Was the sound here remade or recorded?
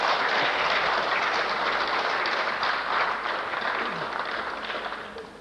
recorded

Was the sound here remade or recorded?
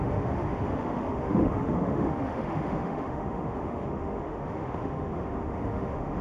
remade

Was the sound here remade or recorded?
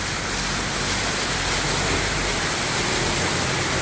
recorded